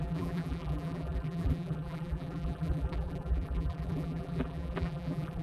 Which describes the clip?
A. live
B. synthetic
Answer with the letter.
B